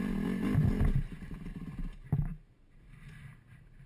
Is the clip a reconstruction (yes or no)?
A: no